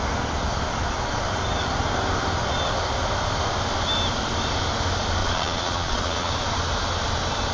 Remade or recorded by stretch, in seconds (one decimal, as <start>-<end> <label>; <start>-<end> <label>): 0.0-5.2 recorded; 5.2-6.3 remade; 6.3-7.5 recorded